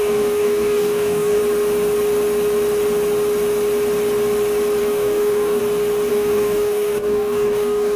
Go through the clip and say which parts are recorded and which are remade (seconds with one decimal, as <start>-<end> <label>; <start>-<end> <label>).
0.0-1.4 remade; 1.4-4.8 recorded; 4.8-5.6 remade; 5.6-6.1 recorded; 6.1-8.0 remade